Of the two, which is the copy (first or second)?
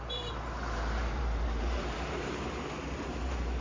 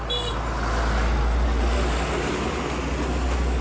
first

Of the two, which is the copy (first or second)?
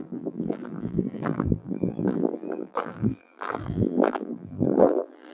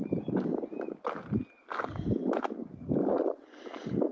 first